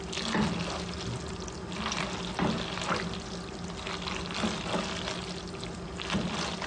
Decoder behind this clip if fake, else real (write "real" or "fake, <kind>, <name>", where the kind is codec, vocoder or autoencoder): real